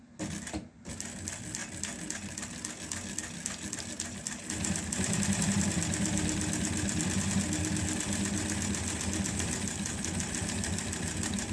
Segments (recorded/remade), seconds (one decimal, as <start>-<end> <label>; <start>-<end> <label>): 0.0-11.5 recorded